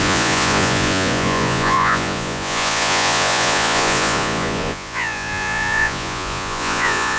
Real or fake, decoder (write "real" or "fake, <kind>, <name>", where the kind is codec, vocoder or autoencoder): fake, vocoder, Vocos